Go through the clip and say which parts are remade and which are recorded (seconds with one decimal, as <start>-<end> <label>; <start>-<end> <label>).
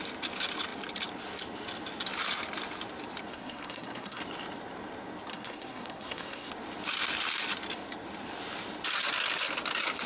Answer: 0.0-3.3 recorded; 3.3-4.2 remade; 4.2-5.3 recorded; 5.3-6.5 remade; 6.5-10.1 recorded